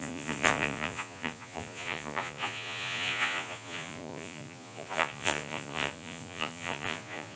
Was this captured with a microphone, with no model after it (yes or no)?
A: no